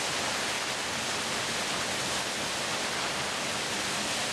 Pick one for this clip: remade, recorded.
recorded